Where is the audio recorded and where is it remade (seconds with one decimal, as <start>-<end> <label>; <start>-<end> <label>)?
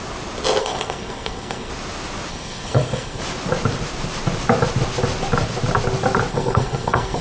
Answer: 0.0-0.6 recorded; 0.6-1.7 remade; 1.7-2.3 recorded; 2.3-3.2 remade; 3.2-6.3 recorded; 6.3-7.2 remade